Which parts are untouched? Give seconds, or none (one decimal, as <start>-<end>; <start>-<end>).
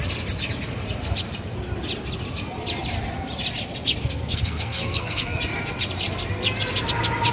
0.0-4.0; 5.4-7.3